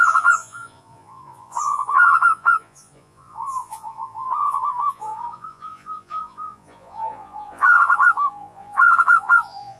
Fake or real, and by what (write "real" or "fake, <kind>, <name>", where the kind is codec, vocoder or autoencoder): fake, vocoder, Vocos